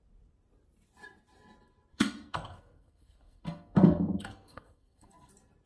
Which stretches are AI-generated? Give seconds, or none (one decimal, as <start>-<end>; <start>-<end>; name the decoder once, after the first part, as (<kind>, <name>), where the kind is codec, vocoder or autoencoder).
1.9-5.3 (codec, SNAC)

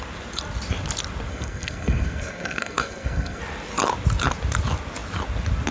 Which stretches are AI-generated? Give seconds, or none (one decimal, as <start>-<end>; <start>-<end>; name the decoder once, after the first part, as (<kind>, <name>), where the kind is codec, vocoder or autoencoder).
1.3-3.4 (codec, SNAC)

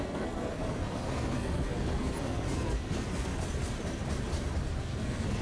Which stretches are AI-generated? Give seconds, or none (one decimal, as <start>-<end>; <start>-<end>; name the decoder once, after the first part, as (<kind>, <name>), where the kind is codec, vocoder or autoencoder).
0.0-3.3 (codec, SNAC); 4.8-5.4

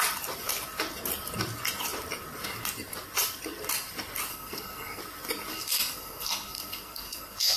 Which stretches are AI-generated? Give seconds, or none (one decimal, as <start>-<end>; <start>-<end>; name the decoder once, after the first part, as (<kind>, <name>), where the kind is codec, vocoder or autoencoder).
4.3-5.0 (codec, SNAC); 5.5-7.6

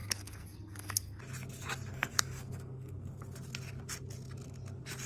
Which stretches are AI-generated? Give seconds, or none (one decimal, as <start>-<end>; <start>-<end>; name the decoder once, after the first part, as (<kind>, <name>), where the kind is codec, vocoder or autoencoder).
0.0-1.2 (codec, SNAC); 1.9-3.2

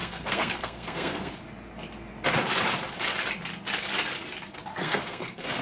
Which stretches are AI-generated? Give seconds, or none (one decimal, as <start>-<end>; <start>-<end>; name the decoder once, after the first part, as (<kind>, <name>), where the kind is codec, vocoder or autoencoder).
0.0-1.3 (codec, SNAC); 4.8-5.6